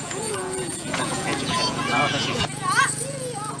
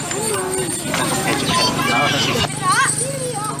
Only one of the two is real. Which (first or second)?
second